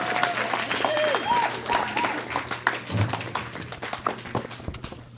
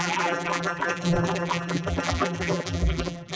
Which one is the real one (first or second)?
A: first